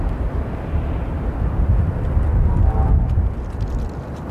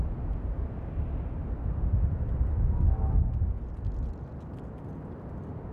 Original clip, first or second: second